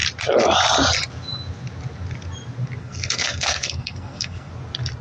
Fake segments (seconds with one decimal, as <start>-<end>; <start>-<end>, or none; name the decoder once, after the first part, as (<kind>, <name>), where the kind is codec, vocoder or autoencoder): 2.8-4.5 (codec, SNAC)